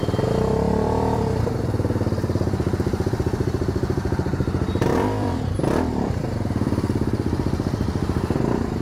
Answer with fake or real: fake